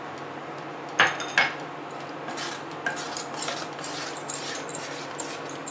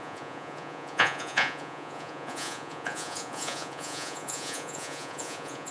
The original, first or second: first